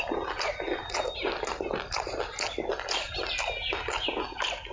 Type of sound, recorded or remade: recorded